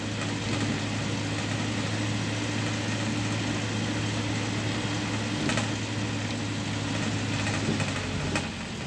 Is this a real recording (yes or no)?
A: yes